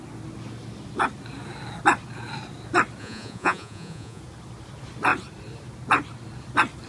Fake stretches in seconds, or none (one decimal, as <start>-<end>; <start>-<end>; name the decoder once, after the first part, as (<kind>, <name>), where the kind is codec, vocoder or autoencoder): 3.0-4.2 (vocoder, Vocos)